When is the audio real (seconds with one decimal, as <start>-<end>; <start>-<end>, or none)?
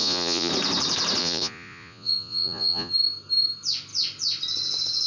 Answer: 0.5-1.2; 2.9-5.1